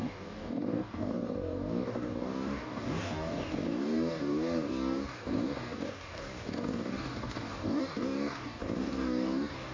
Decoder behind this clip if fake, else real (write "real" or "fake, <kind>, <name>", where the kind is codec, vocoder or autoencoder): fake, codec, DAC